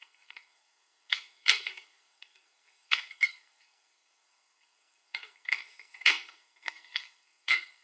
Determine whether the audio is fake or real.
fake